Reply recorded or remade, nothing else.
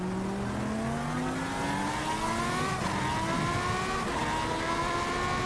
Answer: recorded